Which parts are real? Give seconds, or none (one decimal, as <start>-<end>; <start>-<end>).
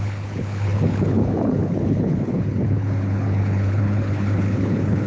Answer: none